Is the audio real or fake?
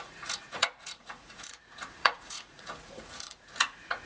fake